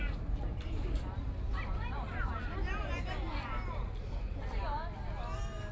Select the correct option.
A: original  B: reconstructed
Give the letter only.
A